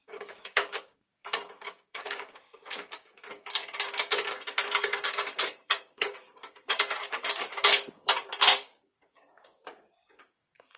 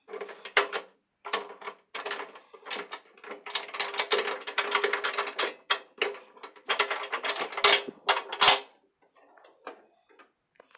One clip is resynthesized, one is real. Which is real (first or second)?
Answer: second